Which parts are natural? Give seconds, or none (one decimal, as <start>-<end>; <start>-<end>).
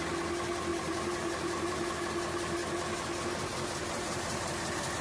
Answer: 0.0-0.7; 2.0-3.8; 4.5-5.0